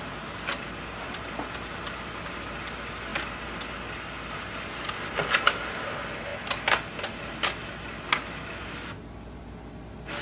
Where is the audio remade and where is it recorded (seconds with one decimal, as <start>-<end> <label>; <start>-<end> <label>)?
0.0-10.2 recorded